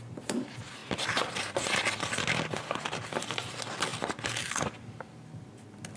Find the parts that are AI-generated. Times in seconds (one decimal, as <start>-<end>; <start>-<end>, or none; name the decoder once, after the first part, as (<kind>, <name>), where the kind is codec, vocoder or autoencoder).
none